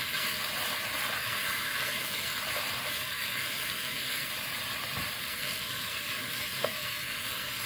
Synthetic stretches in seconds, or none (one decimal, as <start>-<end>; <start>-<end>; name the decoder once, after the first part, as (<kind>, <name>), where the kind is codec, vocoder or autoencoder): 0.0-0.4 (codec, SNAC); 1.2-2.4; 2.9-4.3; 5.2-7.7